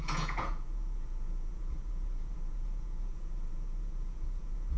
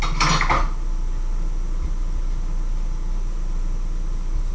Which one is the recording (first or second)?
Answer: second